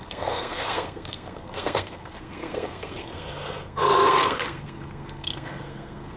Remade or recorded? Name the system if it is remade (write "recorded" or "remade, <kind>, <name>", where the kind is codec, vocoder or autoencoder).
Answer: remade, codec, SNAC